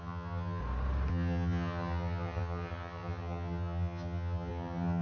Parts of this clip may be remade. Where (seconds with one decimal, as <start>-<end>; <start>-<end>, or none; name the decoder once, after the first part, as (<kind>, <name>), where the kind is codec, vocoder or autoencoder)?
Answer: 0.0-0.6 (vocoder, HiFi-GAN); 1.1-5.0